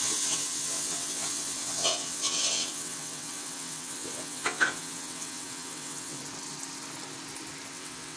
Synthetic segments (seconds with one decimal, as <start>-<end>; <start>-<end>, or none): 0.0-6.2; 7.7-8.2